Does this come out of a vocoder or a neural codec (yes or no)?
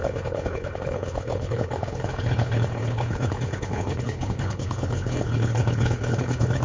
yes